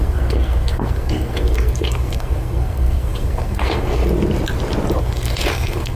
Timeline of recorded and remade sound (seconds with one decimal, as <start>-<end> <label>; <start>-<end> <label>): 0.0-4.0 remade; 4.0-5.0 recorded; 5.0-5.9 remade